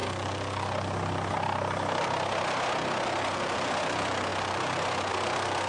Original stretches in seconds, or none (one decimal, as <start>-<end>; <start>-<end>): 0.0-5.7